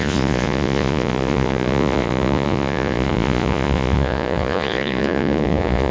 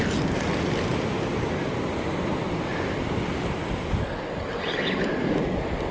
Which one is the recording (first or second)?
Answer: second